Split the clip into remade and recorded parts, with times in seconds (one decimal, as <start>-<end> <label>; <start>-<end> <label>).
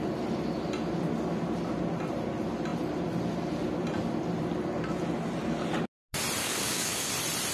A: 0.0-6.4 recorded; 6.4-7.1 remade; 7.1-7.5 recorded